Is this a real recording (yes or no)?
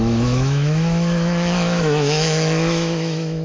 no